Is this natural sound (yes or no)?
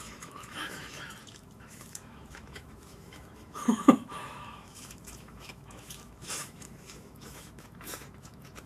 no